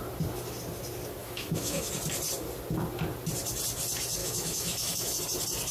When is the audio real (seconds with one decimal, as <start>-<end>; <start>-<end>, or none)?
0.0-1.2; 1.9-4.2; 5.2-5.7